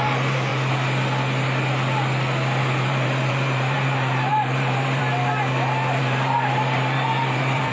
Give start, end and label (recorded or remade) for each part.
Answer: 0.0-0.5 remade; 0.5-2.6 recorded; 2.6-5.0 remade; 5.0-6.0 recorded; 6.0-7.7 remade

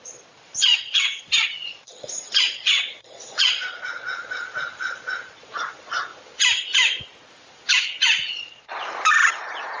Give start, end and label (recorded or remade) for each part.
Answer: 0.0-6.1 remade; 6.1-8.0 recorded; 8.0-9.8 remade

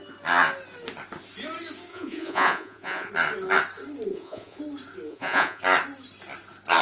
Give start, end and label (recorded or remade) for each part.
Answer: 0.0-1.9 recorded; 1.9-3.1 remade; 3.1-4.1 recorded; 4.1-4.6 remade; 4.6-5.1 recorded; 5.1-5.6 remade; 5.6-6.8 recorded

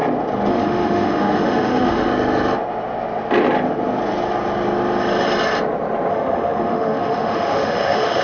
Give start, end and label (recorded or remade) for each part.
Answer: 0.0-0.5 recorded; 0.5-2.1 remade; 2.1-6.1 recorded; 6.1-8.2 remade

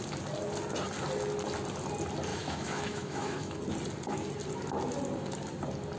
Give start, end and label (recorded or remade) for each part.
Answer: 0.0-2.3 recorded; 2.3-3.6 remade; 3.6-6.0 recorded